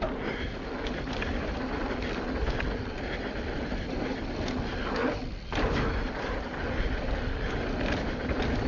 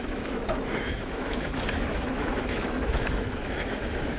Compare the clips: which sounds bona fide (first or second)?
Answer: first